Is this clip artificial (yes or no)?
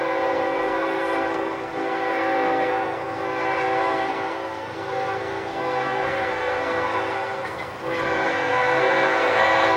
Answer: yes